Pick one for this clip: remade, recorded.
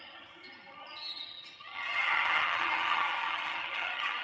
remade